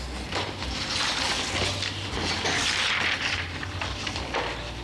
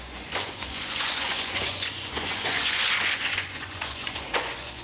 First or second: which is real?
first